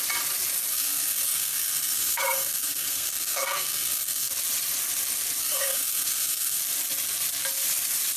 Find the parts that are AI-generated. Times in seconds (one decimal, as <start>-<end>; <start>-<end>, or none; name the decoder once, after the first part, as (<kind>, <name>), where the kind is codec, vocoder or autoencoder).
0.7-4.3 (codec, SNAC); 5.4-6.6